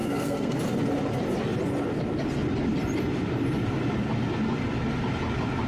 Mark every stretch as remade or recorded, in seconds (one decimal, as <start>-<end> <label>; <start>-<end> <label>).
0.0-0.6 remade; 0.6-5.7 recorded